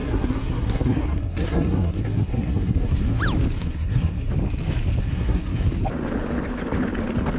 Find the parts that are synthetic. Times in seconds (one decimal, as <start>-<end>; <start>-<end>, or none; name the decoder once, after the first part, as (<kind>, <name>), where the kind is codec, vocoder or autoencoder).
0.0-3.2 (codec, SNAC); 3.6-4.3; 5.0-5.7